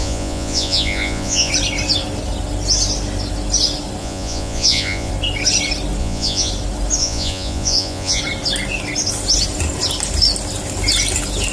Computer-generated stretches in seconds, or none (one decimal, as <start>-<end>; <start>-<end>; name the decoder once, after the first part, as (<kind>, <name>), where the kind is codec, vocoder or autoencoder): 0.0-1.5 (vocoder, Vocos); 4.0-5.1; 6.0-6.5; 7.0-8.2